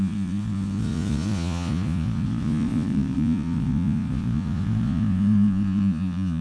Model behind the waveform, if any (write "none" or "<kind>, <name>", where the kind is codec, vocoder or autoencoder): vocoder, Vocos